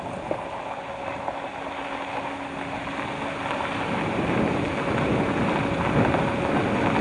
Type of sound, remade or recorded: recorded